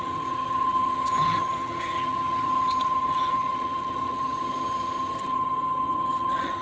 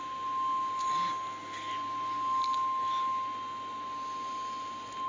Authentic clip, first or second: second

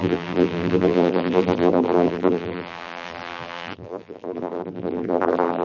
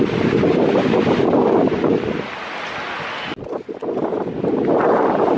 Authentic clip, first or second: second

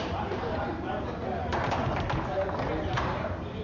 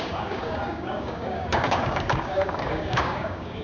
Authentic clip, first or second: first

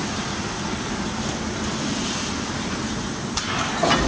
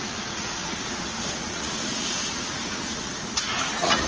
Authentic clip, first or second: first